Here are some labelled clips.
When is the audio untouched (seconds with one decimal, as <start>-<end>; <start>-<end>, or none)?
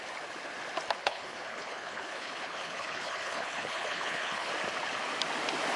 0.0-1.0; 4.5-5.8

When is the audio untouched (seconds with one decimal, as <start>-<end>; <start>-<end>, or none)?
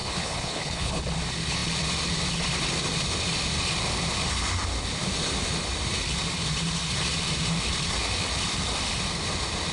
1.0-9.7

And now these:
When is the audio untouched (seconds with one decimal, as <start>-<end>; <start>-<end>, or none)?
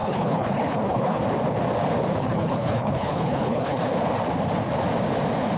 1.2-2.2; 3.9-5.6